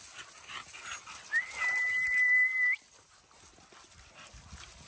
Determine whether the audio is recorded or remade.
recorded